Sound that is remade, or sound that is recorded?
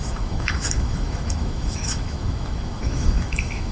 remade